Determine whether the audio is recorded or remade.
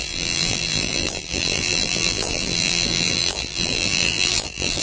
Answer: remade